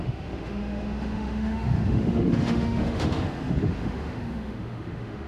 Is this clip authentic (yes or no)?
no